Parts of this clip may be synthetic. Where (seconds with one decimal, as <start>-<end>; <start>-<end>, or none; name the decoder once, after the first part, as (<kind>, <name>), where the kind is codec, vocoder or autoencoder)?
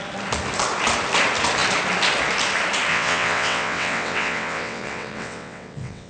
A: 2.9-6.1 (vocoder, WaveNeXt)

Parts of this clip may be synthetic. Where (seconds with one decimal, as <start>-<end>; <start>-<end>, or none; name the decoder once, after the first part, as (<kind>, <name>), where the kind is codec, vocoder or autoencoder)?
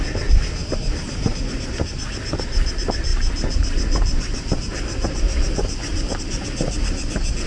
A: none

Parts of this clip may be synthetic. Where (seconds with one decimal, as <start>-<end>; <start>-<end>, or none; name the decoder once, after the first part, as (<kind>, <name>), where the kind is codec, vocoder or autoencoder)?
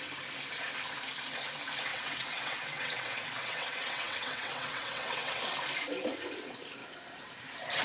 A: 1.9-5.4 (vocoder, WaveNeXt)